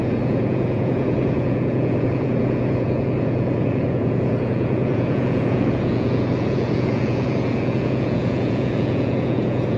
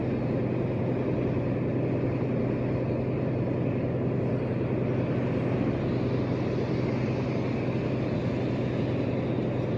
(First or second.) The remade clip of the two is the first